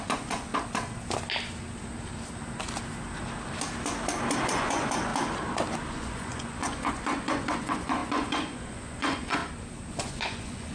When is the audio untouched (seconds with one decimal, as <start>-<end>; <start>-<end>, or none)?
0.5-4.4; 5.1-5.9; 9.4-9.9